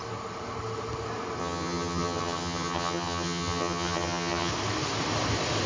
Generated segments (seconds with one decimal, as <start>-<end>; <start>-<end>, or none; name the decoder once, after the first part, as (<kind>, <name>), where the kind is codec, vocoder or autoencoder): 1.4-4.5 (vocoder, HiFi-GAN)